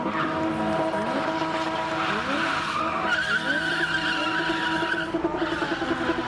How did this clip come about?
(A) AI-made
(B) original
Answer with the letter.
B